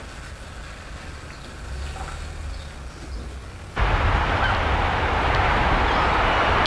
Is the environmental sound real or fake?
real